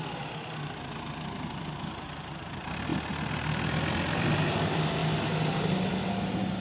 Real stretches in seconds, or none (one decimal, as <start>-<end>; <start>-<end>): 0.0-6.6